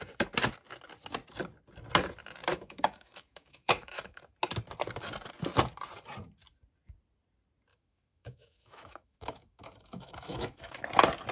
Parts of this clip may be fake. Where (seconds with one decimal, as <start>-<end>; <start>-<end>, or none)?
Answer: 2.5-4.2; 7.7-10.8